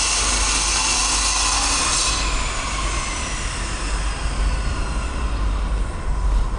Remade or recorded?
recorded